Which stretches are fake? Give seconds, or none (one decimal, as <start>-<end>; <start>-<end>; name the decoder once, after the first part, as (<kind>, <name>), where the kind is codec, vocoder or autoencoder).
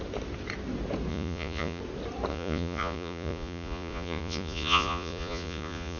1.1-1.8 (vocoder, Vocos); 2.3-6.0